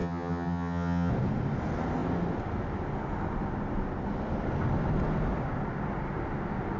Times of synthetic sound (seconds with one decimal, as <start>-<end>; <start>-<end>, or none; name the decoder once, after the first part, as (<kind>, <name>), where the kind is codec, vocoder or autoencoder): 0.0-1.1 (vocoder, HiFi-GAN)